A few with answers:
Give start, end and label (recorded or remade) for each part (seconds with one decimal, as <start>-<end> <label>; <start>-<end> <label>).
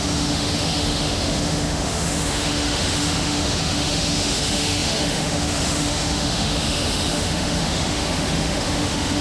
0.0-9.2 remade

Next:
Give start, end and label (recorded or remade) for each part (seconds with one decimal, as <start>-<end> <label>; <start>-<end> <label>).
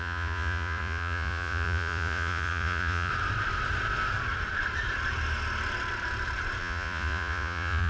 0.0-3.1 remade; 3.1-6.6 recorded; 6.6-7.9 remade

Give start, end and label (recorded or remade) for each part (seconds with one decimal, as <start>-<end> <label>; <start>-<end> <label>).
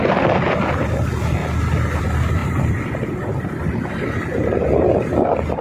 0.0-2.4 recorded; 2.4-4.7 remade; 4.7-5.6 recorded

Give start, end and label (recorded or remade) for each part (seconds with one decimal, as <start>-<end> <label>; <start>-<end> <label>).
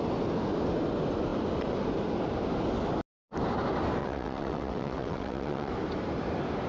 0.0-4.0 recorded; 4.0-5.7 remade; 5.7-6.7 recorded